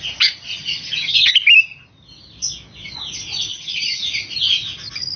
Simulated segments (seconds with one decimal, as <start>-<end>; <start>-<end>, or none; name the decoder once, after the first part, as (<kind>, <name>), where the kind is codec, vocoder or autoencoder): 0.5-1.3 (vocoder, HiFi-GAN); 3.5-4.0